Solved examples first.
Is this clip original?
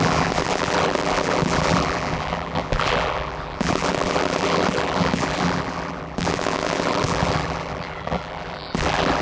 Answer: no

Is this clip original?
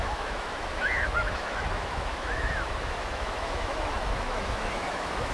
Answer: no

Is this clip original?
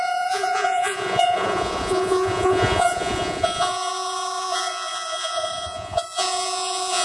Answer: no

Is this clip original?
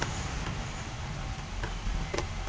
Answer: yes